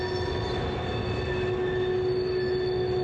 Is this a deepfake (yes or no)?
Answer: no